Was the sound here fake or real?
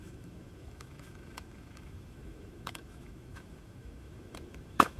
fake